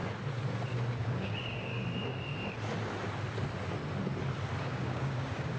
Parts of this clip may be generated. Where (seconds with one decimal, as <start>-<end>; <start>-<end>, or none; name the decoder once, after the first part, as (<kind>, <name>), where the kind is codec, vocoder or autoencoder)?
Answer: 1.0-1.7 (codec, DAC); 4.6-5.6